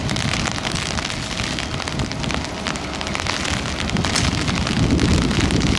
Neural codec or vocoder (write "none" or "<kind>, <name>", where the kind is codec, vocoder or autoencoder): none